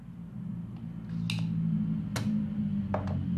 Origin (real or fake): real